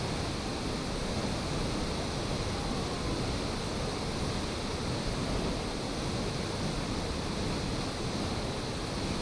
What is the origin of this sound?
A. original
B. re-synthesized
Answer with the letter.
A